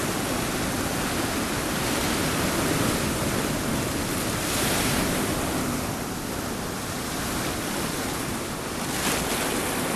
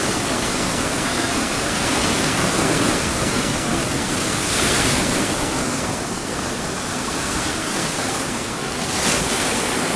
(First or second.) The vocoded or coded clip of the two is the second